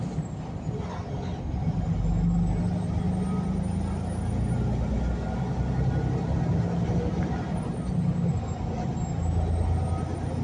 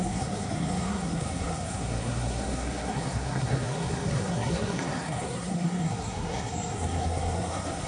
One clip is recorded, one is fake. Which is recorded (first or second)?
first